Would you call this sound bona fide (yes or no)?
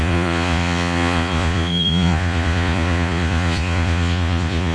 no